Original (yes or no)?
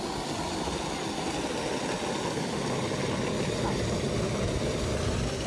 yes